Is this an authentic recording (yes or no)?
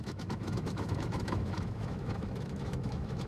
no